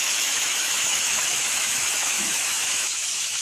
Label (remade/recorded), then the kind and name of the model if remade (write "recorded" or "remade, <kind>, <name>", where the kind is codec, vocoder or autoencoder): remade, autoencoder, DAC-VAE